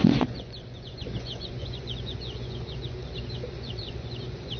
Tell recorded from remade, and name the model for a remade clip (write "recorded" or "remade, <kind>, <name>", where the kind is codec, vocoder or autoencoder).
remade, vocoder, Vocos